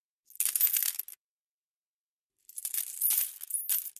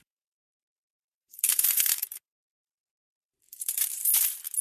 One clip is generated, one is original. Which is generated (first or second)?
second